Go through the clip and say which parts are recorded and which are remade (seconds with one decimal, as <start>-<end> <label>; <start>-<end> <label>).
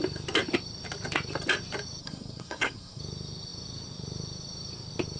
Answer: 0.0-2.0 recorded; 2.0-3.0 remade; 3.0-5.2 recorded